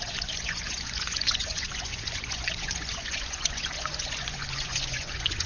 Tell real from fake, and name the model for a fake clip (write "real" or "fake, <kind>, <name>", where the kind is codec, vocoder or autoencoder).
fake, vocoder, Vocos